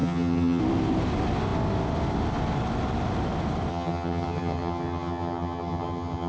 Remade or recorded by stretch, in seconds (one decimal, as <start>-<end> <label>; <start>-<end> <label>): 0.0-0.6 remade; 0.6-3.7 recorded; 3.7-6.3 remade